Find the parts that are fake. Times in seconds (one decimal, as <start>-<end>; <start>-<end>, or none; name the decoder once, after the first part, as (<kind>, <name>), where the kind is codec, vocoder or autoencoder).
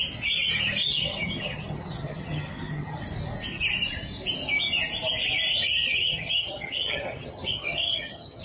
0.8-3.0 (vocoder, HiFi-GAN); 5.7-8.4